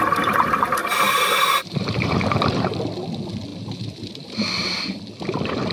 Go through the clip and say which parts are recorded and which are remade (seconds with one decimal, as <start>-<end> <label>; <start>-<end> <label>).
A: 0.0-0.8 recorded; 0.8-2.8 remade; 2.8-3.5 recorded; 3.5-5.0 remade; 5.0-5.7 recorded